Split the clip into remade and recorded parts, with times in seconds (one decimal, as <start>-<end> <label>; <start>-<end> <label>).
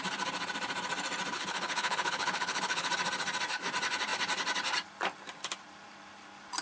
0.0-1.3 recorded; 1.3-2.9 remade; 2.9-6.6 recorded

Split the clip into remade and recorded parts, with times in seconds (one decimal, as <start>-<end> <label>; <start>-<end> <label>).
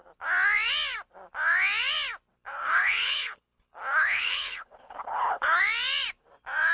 0.0-2.5 recorded; 2.5-5.6 remade; 5.6-6.7 recorded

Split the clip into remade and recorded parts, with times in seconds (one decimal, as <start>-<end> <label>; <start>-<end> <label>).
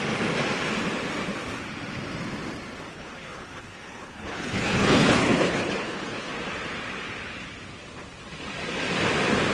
0.0-2.9 recorded; 2.9-6.3 remade; 6.3-9.5 recorded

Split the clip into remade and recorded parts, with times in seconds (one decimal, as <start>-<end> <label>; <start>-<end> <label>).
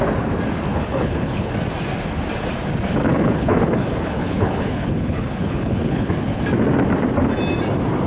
0.0-0.7 recorded; 0.7-1.5 remade; 1.5-3.0 recorded; 3.0-6.4 remade; 6.4-8.1 recorded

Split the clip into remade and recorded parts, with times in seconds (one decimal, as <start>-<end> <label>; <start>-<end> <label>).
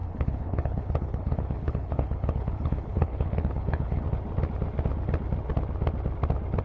0.0-4.0 remade; 4.0-6.6 recorded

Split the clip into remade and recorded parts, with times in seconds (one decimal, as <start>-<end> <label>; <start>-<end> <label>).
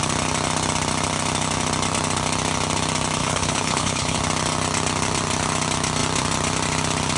0.0-3.2 recorded; 3.2-4.2 remade; 4.2-7.2 recorded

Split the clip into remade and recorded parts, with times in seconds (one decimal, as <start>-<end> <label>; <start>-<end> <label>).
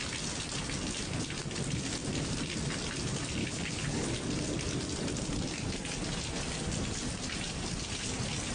0.0-3.4 recorded; 3.4-4.1 remade; 4.1-8.5 recorded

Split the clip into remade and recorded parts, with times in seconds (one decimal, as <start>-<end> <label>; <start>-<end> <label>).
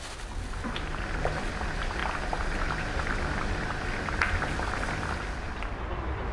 0.0-6.3 recorded